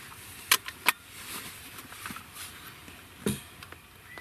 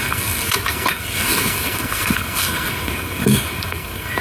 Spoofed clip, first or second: second